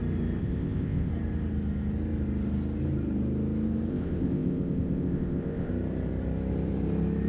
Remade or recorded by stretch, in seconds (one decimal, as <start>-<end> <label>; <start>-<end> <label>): 0.0-0.4 recorded; 0.4-1.1 remade; 1.1-3.9 recorded; 3.9-5.7 remade; 5.7-7.3 recorded